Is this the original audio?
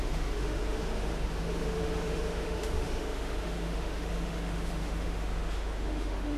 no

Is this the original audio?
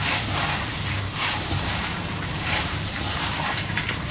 no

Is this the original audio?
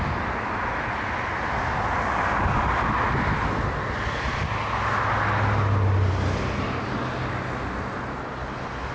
yes